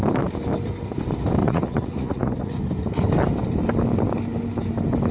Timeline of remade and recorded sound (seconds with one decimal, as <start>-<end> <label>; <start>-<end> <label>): 0.0-1.4 recorded; 1.4-2.6 remade; 2.6-5.1 recorded